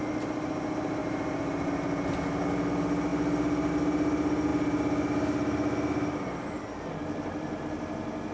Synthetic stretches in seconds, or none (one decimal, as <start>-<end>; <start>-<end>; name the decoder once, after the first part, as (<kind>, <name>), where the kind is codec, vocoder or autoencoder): none